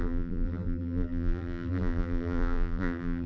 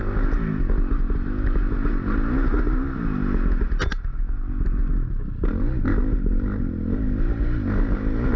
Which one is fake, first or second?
first